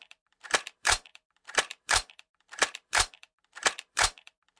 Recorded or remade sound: remade